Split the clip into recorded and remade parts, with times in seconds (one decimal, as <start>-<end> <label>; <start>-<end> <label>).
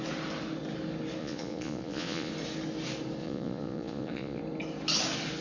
0.0-1.2 recorded; 1.2-2.3 remade; 2.3-3.2 recorded; 3.2-4.4 remade; 4.4-5.4 recorded